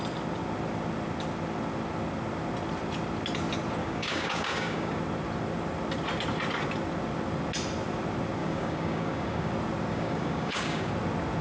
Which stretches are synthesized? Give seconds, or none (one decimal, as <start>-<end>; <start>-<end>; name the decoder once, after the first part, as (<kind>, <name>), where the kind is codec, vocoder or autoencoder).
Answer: 3.8-5.0 (codec, DAC); 8.4-9.5; 9.9-10.9